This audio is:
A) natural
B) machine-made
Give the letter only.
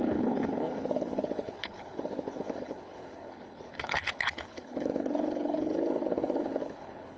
B